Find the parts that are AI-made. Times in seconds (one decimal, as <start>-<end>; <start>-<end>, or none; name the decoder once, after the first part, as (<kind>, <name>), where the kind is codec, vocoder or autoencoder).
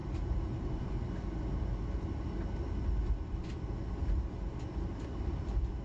none